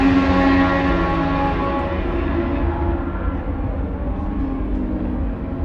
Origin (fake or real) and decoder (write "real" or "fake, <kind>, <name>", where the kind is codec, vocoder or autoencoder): real